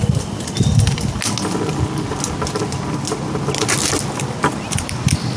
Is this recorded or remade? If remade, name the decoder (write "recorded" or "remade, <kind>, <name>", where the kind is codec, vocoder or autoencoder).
recorded